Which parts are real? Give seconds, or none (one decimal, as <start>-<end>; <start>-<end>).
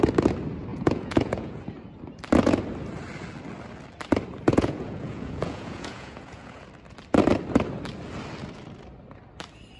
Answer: 0.0-0.7; 1.6-4.5; 6.7-9.8